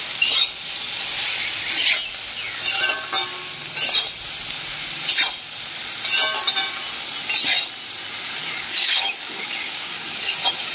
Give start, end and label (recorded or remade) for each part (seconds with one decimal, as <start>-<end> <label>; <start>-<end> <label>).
0.0-8.4 recorded; 8.4-10.2 remade; 10.2-10.7 recorded